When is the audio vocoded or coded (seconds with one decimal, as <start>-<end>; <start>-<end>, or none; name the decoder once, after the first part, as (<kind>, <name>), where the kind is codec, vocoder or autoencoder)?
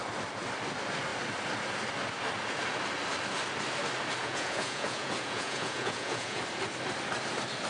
4.2-6.4 (vocoder, Vocos)